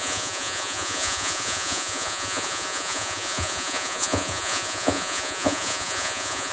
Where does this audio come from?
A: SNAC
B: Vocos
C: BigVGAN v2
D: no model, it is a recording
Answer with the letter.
B